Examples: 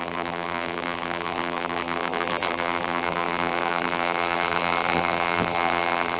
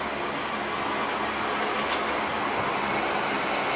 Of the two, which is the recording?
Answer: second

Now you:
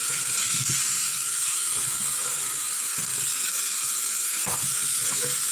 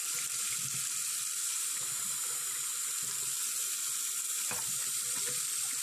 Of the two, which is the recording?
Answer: second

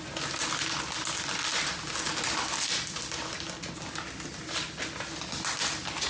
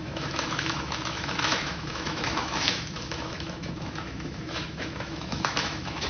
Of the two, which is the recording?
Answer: first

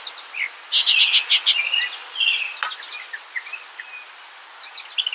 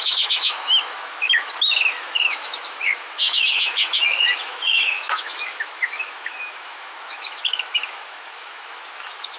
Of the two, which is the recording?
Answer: first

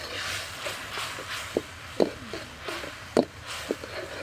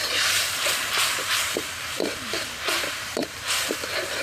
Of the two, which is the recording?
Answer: first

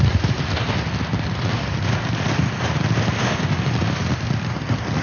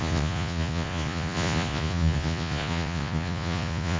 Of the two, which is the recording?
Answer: first